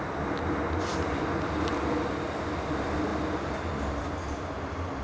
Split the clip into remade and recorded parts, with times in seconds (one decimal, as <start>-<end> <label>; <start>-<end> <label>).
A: 0.0-5.0 recorded